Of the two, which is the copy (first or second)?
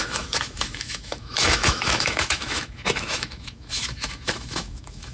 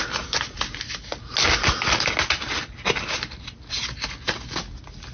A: first